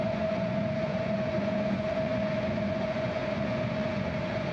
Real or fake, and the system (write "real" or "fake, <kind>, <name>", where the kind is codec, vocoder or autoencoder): fake, vocoder, Vocos